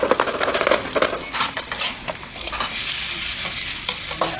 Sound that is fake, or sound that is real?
real